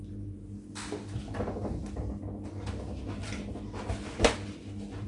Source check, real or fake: real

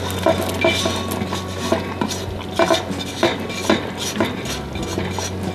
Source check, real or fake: real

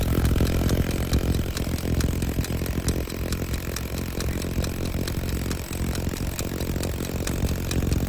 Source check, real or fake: real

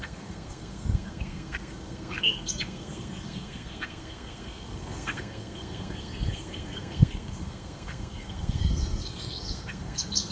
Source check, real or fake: fake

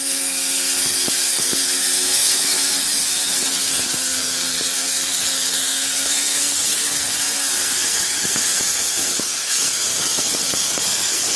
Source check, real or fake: fake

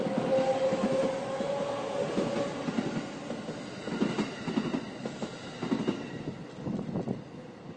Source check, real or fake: real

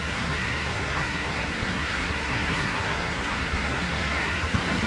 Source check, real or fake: fake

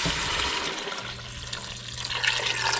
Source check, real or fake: real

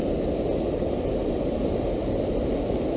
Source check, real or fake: real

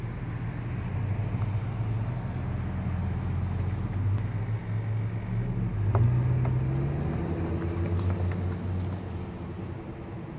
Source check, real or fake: real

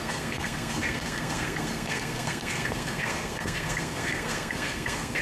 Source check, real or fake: fake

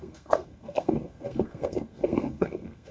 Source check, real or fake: fake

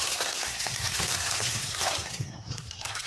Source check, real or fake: fake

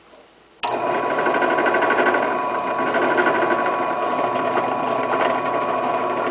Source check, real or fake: real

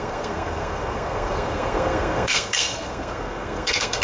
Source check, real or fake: fake